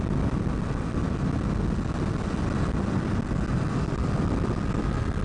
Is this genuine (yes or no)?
yes